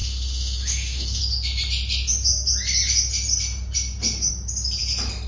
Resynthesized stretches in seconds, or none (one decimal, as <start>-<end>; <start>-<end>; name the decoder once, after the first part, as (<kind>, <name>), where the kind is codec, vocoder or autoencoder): 0.0-1.2 (autoencoder, DAC-VAE)